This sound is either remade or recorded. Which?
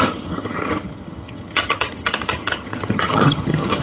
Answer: remade